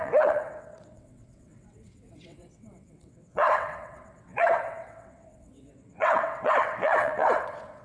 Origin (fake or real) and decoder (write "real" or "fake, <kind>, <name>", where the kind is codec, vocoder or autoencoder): fake, vocoder, WaveNeXt